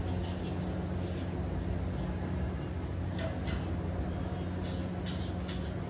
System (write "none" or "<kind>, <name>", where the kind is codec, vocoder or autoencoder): none